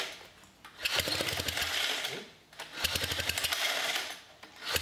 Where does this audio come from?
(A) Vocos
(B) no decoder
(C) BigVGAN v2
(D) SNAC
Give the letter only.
B